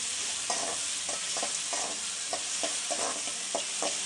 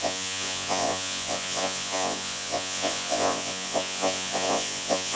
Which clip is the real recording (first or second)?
first